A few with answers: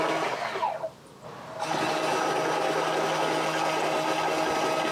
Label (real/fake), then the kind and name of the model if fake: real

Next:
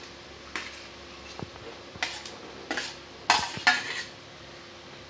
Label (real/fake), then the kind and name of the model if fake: real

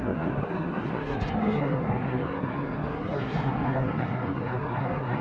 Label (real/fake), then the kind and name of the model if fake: fake, codec, SNAC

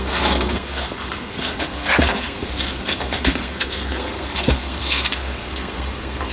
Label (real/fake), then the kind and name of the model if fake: fake, codec, SNAC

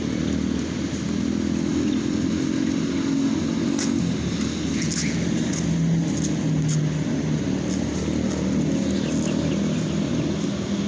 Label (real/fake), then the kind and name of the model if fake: real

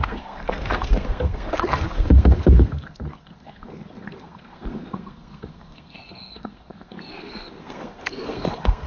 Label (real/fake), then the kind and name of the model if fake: fake, codec, SNAC